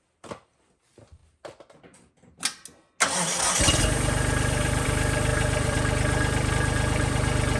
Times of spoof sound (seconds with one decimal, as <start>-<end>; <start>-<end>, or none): 0.0-1.2; 3.8-7.6